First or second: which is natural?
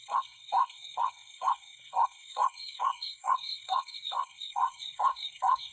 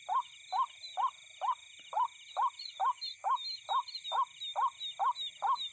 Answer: second